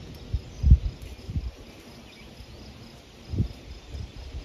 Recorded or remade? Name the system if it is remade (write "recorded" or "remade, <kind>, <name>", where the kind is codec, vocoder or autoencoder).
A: recorded